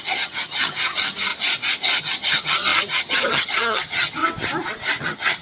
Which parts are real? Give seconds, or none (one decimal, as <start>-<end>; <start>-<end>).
1.3-2.0; 4.2-5.0